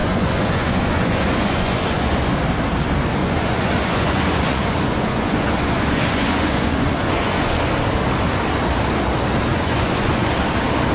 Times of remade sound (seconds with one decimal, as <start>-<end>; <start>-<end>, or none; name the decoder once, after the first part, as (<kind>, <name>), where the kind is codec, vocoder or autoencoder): 0.0-2.3 (vocoder, Vocos); 3.2-7.7; 9.5-10.3